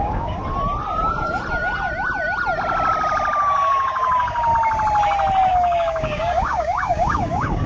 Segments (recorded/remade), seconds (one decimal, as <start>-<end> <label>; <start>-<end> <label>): 0.0-0.4 remade; 0.4-3.4 recorded; 3.4-4.5 remade; 4.5-5.5 recorded; 5.5-7.7 remade